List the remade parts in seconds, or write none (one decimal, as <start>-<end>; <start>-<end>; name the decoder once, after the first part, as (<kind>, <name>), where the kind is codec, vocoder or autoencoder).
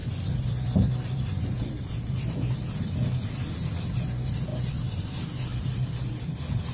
0.0-4.0 (vocoder, BigVGAN v2); 4.5-5.1; 5.5-6.1